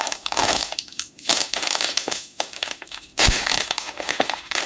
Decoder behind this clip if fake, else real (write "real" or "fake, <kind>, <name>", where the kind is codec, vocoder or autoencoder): fake, autoencoder, DAC-VAE